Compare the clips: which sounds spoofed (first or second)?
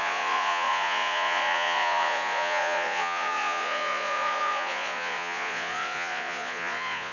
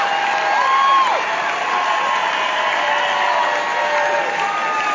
first